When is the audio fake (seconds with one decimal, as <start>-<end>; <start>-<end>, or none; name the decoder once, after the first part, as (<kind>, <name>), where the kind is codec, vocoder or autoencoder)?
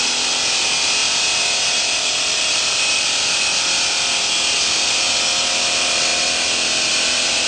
none